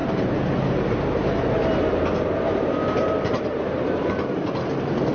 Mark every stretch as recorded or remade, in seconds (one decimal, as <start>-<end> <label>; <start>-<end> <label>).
0.0-0.5 remade; 0.5-3.0 recorded; 3.0-4.5 remade; 4.5-5.1 recorded